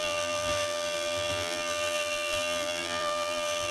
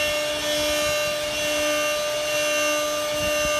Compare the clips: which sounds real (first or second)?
second